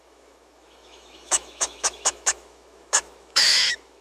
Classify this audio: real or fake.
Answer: fake